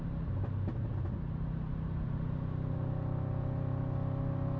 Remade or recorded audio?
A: recorded